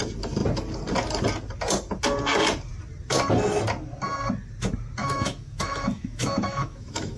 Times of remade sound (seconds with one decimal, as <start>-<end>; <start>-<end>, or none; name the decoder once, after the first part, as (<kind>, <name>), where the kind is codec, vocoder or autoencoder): 5.0-7.2 (autoencoder, DAC-VAE)